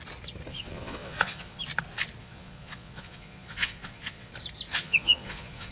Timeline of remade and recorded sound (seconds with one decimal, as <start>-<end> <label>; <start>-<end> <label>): 0.0-0.5 recorded; 0.5-1.6 remade; 1.6-2.2 recorded; 2.2-4.3 remade; 4.3-4.7 recorded; 4.7-5.7 remade